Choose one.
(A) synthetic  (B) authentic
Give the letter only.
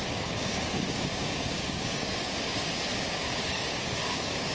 A